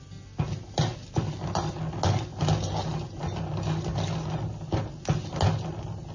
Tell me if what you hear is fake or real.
real